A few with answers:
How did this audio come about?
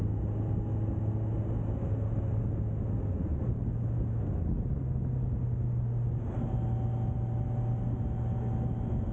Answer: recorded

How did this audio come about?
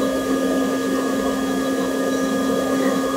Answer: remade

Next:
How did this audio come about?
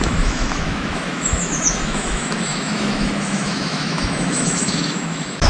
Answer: remade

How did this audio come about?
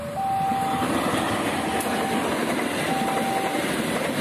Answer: recorded